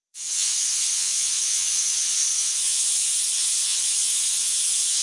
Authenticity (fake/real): fake